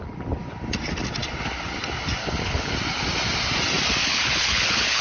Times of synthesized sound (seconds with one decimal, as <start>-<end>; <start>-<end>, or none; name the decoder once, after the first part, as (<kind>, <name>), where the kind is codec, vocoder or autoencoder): 2.2-2.7 (codec, HILCodec); 4.0-5.0

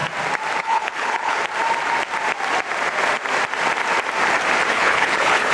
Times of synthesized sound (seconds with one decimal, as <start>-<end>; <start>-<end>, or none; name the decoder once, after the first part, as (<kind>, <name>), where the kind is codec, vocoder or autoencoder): 0.6-1.4 (codec, HILCodec); 4.7-5.5

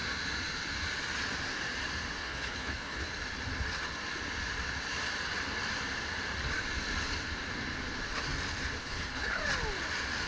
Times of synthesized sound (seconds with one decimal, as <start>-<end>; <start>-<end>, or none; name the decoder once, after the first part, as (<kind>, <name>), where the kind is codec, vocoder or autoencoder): 2.2-3.1 (codec, HILCodec); 8.8-9.4

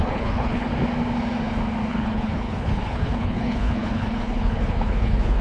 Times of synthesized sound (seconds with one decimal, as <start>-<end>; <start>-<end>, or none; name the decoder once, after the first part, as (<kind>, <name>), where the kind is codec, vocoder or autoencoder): 0.0-0.7 (codec, HILCodec); 1.9-5.4

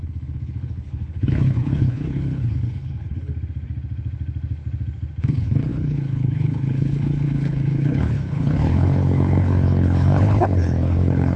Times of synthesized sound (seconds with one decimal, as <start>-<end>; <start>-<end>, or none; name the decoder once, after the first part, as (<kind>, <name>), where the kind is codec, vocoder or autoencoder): 0.0-3.3 (codec, HILCodec); 5.2-11.4

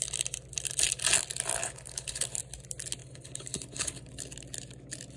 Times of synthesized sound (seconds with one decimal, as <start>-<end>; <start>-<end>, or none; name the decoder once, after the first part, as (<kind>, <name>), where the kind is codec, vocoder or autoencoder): 1.6-2.4 (codec, HILCodec); 3.0-4.1

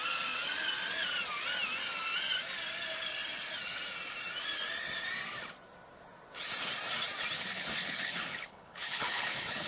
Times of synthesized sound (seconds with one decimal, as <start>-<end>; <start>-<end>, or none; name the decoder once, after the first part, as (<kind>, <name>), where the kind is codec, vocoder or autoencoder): 7.4-9.7 (codec, HILCodec)